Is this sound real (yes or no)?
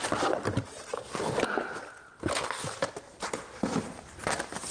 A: yes